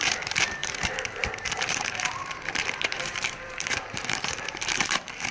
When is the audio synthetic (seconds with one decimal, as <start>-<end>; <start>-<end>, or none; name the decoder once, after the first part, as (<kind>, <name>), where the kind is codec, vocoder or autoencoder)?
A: 0.0-5.3 (vocoder, BigVGAN v2)